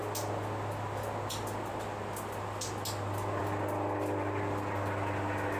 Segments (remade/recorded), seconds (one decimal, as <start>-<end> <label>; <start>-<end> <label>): 0.0-5.6 recorded